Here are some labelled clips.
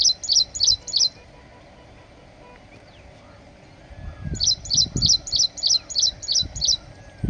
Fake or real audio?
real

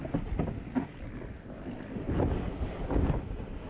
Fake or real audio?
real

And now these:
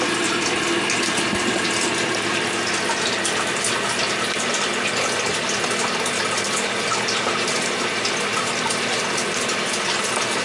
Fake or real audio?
real